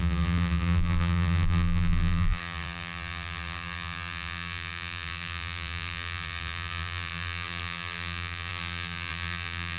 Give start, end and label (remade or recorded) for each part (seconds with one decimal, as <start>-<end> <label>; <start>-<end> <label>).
0.0-9.8 remade